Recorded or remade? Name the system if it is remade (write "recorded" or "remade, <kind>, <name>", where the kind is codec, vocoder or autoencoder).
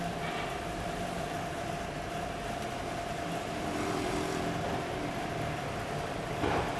remade, vocoder, BigVGAN v2